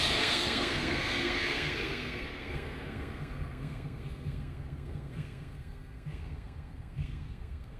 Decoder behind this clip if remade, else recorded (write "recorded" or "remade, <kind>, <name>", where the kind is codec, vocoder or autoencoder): remade, codec, SNAC